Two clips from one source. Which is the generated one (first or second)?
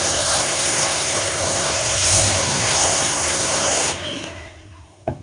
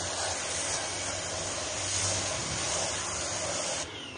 first